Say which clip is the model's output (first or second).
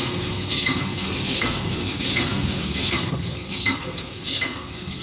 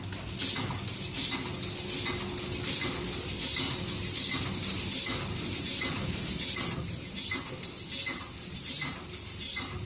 first